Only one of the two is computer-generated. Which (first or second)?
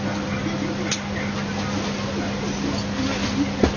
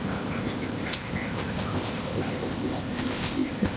second